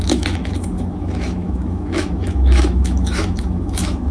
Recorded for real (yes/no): no